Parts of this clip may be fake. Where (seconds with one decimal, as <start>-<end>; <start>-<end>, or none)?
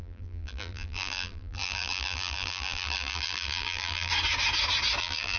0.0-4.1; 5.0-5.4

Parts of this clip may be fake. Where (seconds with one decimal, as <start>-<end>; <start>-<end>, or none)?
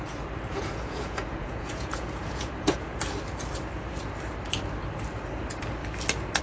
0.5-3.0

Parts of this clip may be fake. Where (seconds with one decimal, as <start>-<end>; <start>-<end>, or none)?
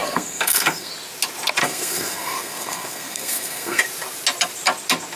0.0-0.9; 1.6-3.8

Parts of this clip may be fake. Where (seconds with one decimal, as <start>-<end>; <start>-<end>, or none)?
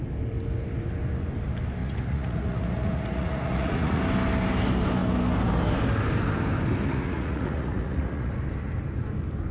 1.8-4.0; 6.9-8.3